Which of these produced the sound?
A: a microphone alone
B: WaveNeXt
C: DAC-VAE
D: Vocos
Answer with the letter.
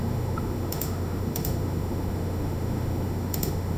C